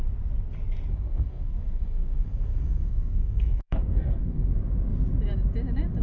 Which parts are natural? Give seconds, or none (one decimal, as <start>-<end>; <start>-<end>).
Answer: 0.0-0.9; 4.5-6.0